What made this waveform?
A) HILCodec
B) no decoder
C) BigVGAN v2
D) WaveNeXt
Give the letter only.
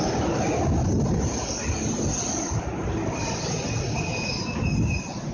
B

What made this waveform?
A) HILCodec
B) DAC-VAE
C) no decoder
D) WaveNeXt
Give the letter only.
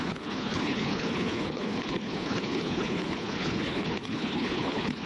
A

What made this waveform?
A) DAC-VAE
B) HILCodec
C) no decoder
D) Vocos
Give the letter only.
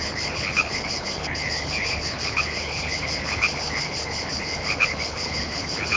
B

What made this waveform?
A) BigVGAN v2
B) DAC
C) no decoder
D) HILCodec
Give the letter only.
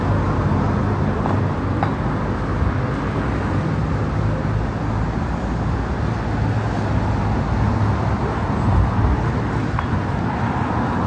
C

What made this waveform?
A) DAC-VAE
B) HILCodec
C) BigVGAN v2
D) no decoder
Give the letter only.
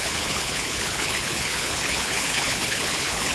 B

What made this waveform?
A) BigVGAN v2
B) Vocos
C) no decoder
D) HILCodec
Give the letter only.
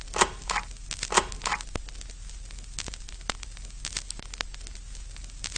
C